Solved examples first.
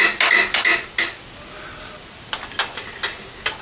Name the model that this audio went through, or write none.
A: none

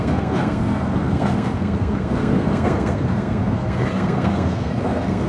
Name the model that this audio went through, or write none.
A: codec, SNAC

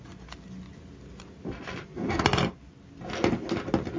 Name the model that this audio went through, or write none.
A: none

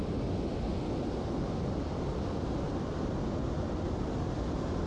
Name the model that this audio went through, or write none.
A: none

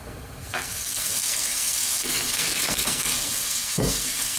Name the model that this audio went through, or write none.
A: codec, SNAC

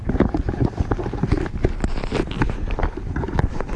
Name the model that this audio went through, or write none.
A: none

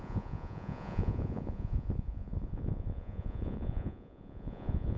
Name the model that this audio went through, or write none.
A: vocoder, Vocos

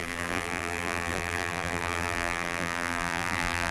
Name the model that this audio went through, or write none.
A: vocoder, BigVGAN v2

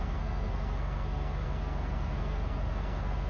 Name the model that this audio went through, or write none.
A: codec, SNAC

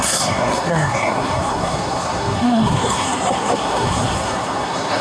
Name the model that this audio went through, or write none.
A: codec, SNAC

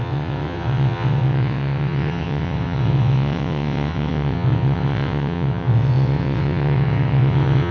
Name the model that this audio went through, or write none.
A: vocoder, WaveNeXt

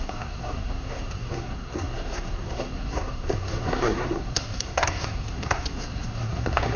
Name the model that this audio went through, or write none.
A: codec, SNAC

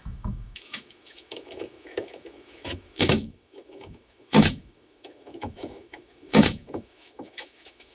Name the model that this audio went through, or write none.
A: autoencoder, DAC-VAE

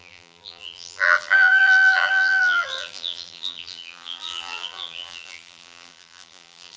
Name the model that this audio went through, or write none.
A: vocoder, BigVGAN v2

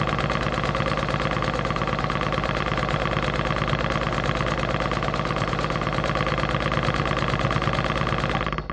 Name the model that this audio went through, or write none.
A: none